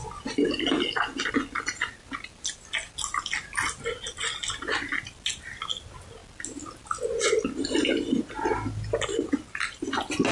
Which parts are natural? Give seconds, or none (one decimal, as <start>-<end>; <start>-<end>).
0.0-10.3